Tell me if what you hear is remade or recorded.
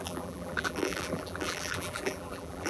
remade